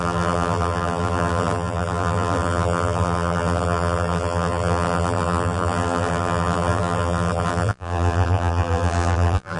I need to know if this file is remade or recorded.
remade